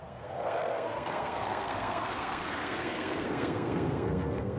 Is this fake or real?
fake